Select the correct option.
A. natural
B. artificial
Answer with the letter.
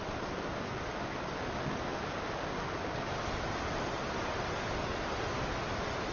A